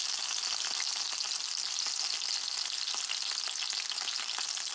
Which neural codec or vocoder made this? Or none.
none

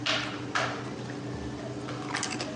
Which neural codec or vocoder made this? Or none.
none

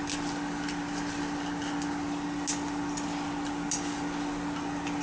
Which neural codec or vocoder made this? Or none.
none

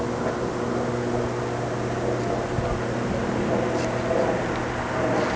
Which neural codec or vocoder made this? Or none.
none